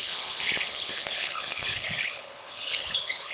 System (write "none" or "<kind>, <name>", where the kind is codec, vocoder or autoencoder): codec, HILCodec